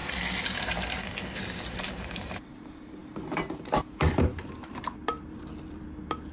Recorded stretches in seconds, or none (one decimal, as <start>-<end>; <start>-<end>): 0.0-0.6; 1.0-1.8